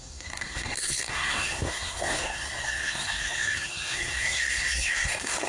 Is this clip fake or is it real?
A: fake